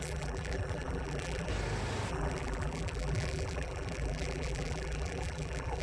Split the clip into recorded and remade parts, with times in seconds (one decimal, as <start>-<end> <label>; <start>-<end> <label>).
0.0-1.5 remade; 1.5-2.1 recorded; 2.1-5.8 remade